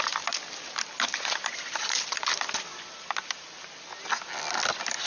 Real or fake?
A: real